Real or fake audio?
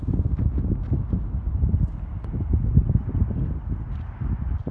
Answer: real